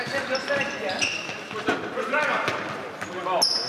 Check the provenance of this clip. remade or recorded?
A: recorded